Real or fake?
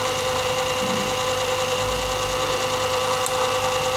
real